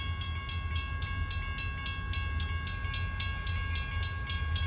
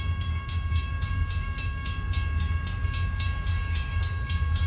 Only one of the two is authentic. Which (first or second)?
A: first